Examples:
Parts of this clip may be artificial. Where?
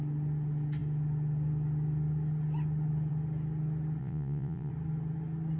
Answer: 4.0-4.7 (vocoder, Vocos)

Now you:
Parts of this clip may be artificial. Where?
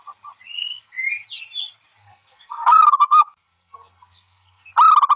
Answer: 0.6-1.1 (codec, SNAC); 2.0-4.7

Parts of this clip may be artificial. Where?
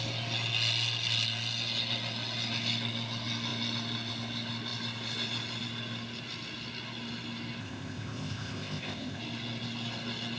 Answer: 7.6-9.2 (codec, ZipCodec)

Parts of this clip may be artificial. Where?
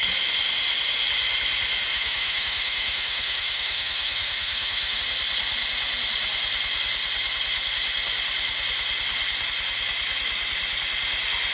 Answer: 1.9-5.0 (autoencoder, DAC-VAE)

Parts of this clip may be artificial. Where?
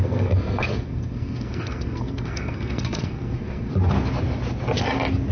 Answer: 0.0-3.7 (codec, SNAC)